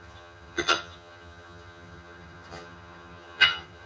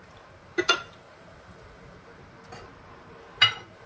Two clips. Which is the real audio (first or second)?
second